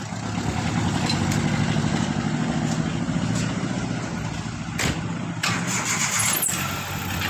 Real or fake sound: real